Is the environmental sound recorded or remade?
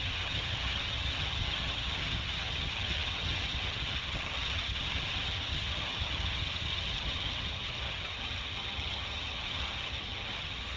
remade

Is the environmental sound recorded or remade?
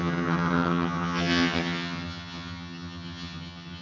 remade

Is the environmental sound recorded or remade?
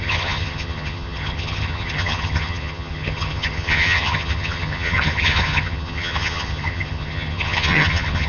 remade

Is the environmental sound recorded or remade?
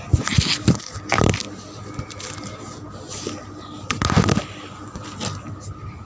recorded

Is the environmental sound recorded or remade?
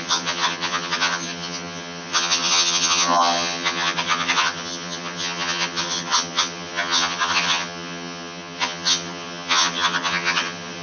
remade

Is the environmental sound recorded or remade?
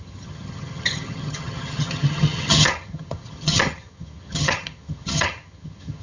remade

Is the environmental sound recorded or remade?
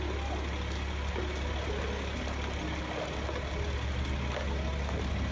recorded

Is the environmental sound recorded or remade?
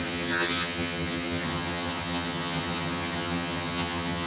remade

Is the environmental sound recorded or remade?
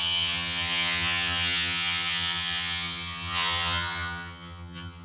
remade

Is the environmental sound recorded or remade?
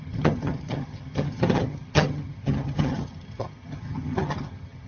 remade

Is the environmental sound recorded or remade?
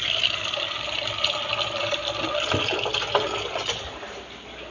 recorded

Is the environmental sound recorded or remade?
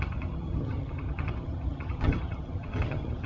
remade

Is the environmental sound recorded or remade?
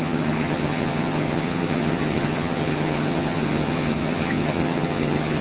remade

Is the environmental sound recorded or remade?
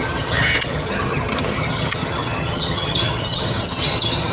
remade